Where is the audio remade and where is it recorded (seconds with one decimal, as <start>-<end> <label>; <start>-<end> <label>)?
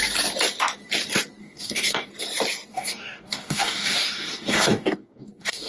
0.0-1.4 recorded; 1.4-2.1 remade; 2.1-2.7 recorded; 2.7-5.7 remade